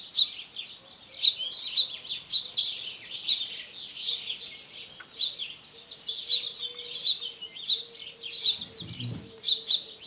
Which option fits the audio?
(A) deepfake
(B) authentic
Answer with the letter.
B